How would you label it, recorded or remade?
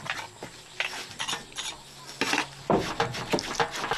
recorded